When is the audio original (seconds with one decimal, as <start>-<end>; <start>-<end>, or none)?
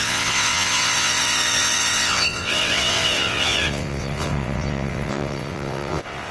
none